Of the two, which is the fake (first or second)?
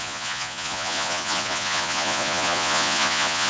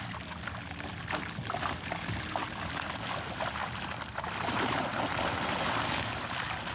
first